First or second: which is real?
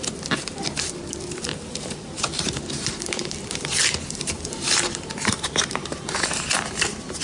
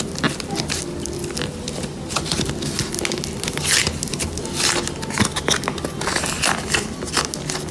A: second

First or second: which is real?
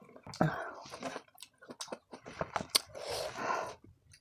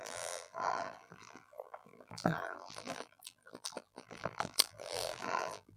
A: first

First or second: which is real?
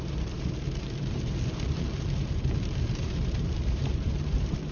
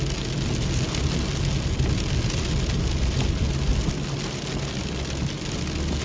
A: second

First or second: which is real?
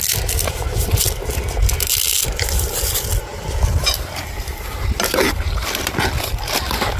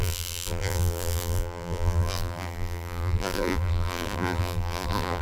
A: first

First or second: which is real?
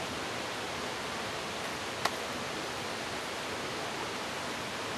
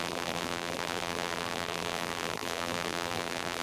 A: first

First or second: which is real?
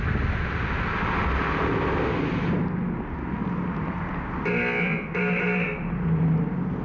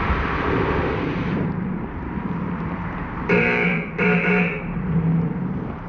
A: first